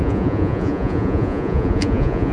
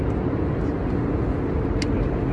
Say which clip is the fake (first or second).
first